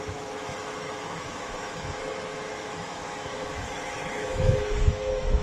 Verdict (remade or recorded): remade